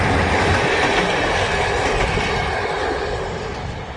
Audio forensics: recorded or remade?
recorded